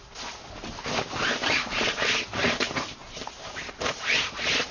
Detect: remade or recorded recorded